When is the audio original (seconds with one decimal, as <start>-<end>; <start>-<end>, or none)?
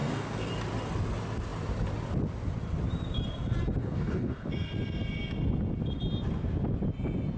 0.5-3.8; 4.5-7.4